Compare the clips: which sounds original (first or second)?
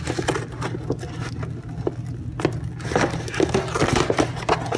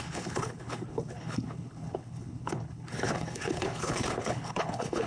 first